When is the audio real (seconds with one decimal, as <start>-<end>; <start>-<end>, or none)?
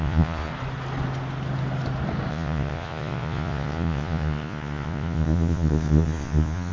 0.5-2.3